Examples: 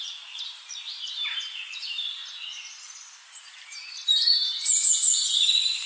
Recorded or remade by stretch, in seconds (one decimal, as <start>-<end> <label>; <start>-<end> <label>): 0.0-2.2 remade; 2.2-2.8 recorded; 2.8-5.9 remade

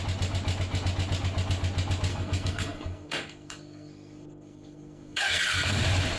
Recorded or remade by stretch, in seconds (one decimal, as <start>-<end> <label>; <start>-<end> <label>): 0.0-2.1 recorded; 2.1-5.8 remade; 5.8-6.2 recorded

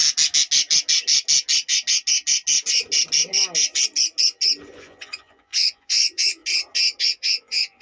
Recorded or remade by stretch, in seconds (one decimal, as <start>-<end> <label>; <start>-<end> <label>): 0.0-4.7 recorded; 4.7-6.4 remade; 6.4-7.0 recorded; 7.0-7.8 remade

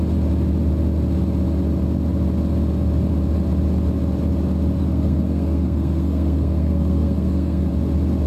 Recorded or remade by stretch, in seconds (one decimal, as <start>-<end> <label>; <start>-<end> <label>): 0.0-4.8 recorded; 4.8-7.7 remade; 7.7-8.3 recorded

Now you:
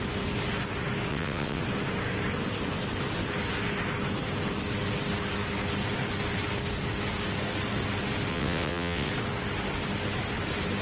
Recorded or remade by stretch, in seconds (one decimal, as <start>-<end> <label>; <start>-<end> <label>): 0.0-1.1 recorded; 1.1-1.6 remade; 1.6-8.3 recorded; 8.3-9.1 remade; 9.1-10.8 recorded

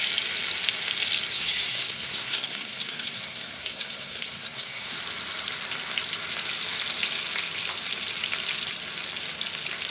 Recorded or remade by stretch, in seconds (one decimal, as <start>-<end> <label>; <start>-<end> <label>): 0.0-1.3 recorded; 1.3-5.0 remade; 5.0-9.9 recorded